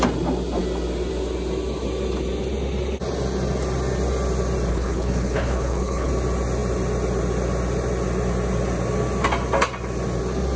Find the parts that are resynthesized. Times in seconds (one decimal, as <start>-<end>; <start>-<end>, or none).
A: 4.7-6.1